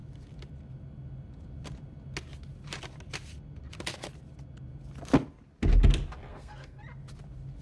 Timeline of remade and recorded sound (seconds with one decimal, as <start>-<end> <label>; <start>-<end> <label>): 0.0-6.3 recorded; 6.3-6.8 remade; 6.8-7.6 recorded

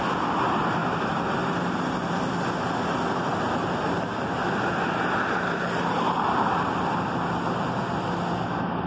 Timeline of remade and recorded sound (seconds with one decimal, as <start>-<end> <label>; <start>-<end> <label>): 0.0-8.9 recorded

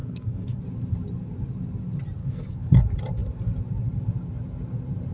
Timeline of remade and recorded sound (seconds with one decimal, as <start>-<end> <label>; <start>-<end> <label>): 0.0-0.6 remade; 0.6-2.2 recorded; 2.2-2.8 remade; 2.8-5.1 recorded

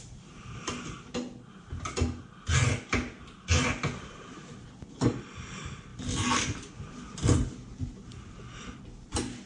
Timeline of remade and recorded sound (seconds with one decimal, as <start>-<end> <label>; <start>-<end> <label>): 0.0-9.5 recorded

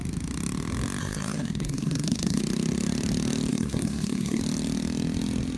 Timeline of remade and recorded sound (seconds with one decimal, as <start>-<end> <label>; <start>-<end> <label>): 0.0-1.0 recorded; 1.0-2.4 remade; 2.4-3.5 recorded; 3.5-4.4 remade; 4.4-5.6 recorded

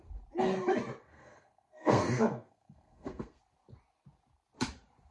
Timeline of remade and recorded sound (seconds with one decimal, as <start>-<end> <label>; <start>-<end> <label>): 0.0-1.0 recorded; 1.0-3.4 remade; 3.4-5.1 recorded